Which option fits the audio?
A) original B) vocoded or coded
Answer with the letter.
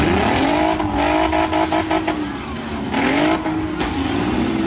A